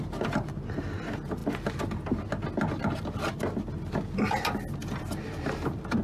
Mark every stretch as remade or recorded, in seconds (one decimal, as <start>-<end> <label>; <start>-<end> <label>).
0.0-6.0 recorded